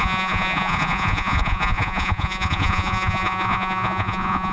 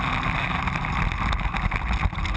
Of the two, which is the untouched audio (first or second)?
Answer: second